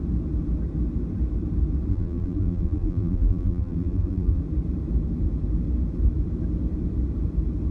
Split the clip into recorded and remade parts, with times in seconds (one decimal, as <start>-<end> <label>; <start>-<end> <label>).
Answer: 0.0-1.9 recorded; 1.9-4.4 remade; 4.4-7.7 recorded